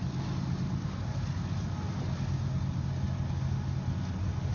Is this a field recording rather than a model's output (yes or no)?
yes